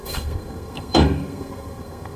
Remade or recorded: remade